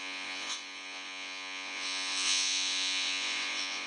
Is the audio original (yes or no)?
no